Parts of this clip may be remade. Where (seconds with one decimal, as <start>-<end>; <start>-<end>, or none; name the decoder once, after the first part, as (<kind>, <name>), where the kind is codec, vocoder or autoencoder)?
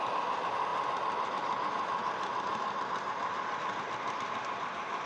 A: 0.7-3.8 (vocoder, BigVGAN v2)